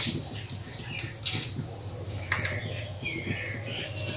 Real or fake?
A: real